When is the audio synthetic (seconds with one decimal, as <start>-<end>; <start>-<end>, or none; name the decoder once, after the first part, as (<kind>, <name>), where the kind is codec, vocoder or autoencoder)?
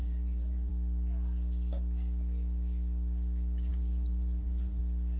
0.0-0.7 (vocoder, BigVGAN v2); 3.7-4.8